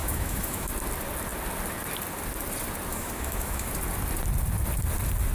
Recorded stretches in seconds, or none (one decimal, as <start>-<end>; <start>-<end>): 0.7-2.9; 3.7-5.3

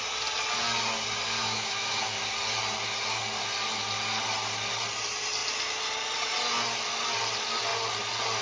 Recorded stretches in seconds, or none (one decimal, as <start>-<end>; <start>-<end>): 0.0-1.4; 2.2-8.4

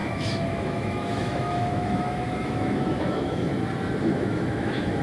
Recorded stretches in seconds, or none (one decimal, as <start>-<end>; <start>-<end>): 3.5-4.0

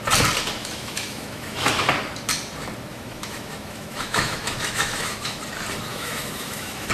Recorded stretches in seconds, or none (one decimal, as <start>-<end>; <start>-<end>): 0.0-0.6; 1.7-2.9; 5.4-5.9